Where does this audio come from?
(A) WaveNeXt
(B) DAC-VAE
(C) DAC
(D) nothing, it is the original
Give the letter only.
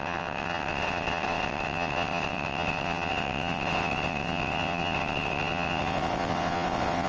A